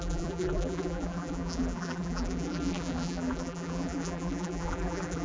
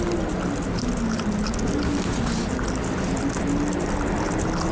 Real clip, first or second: second